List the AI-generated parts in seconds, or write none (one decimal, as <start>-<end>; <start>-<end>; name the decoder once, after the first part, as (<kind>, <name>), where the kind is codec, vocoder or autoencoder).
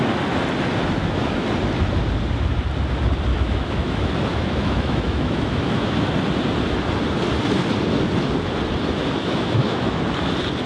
1.0-1.5 (autoencoder, DAC-VAE); 3.3-6.1; 9.2-10.0